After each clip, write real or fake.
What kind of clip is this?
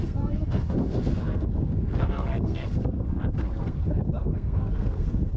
fake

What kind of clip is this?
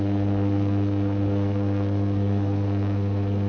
fake